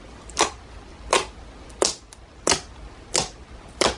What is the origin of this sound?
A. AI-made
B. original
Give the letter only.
B